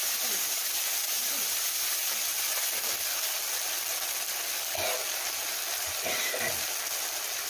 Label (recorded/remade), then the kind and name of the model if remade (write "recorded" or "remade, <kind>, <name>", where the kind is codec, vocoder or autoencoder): recorded